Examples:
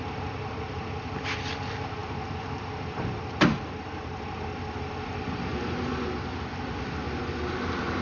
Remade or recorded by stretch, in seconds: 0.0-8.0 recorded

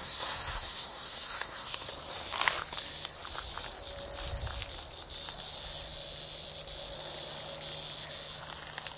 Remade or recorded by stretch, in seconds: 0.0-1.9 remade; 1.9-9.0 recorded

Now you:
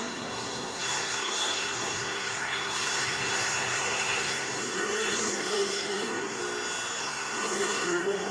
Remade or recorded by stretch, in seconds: 0.0-6.4 remade; 6.4-7.0 recorded; 7.0-8.3 remade